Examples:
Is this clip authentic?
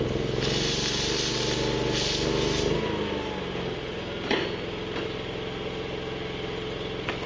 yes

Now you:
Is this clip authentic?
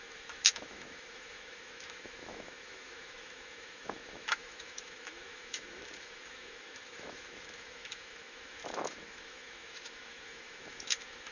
no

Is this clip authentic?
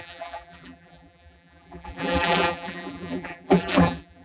no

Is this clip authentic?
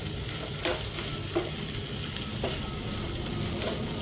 yes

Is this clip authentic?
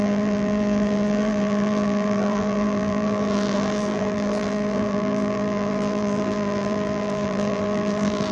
no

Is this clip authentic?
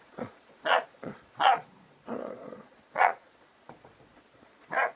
no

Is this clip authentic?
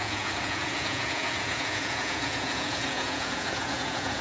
no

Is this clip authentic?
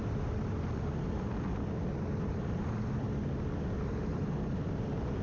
yes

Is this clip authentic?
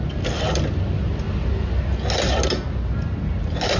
yes